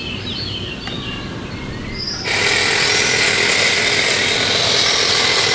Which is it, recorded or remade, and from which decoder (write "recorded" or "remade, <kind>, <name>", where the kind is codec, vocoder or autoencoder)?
recorded